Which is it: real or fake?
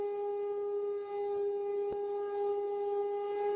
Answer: real